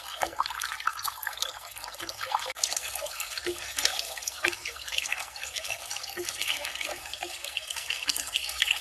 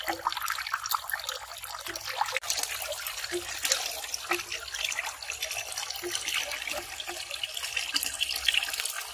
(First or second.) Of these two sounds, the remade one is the first